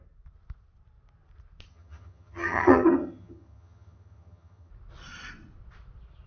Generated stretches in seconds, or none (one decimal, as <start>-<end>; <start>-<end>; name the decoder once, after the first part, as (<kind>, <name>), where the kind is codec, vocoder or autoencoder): 1.7-4.7 (vocoder, HiFi-GAN)